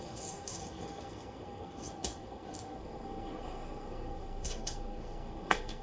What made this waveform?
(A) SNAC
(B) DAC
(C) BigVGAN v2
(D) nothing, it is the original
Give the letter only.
A